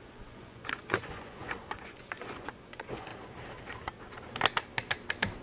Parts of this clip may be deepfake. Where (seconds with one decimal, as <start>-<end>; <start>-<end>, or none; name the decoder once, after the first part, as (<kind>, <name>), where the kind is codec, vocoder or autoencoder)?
0.0-3.1 (vocoder, Vocos)